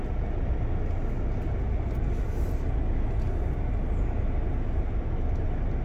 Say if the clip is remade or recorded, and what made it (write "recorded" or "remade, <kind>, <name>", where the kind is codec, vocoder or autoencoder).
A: recorded